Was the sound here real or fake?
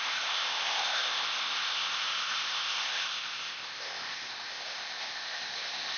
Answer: fake